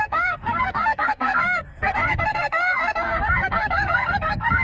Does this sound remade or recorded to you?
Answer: remade